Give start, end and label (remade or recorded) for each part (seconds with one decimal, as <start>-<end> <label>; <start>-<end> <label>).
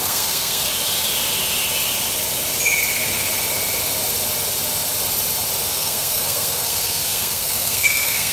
0.0-0.7 remade; 0.7-5.7 recorded; 5.7-8.3 remade